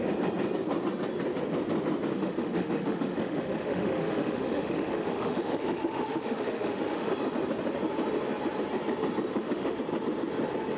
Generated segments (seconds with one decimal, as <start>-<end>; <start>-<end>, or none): 2.1-7.1; 9.3-9.8